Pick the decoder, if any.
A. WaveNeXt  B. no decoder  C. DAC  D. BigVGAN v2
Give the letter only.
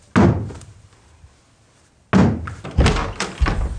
B